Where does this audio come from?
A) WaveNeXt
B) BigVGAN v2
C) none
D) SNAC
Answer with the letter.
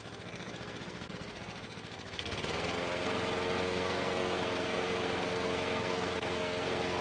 D